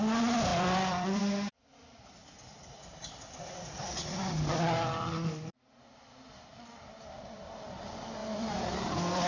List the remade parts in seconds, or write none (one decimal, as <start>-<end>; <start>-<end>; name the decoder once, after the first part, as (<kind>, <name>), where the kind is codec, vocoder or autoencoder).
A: 0.5-1.2 (vocoder, BigVGAN v2); 2.2-4.3; 8.2-8.9